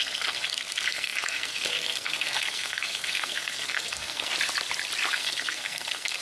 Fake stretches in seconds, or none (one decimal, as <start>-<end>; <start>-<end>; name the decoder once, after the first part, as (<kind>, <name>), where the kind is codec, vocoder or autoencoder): 0.0-4.3 (codec, SNAC); 5.1-6.2